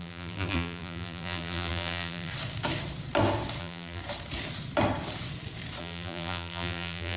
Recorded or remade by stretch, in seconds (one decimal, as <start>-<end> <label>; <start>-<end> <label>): 0.0-2.3 remade; 2.3-3.6 recorded; 3.6-4.0 remade; 4.0-5.8 recorded; 5.8-7.2 remade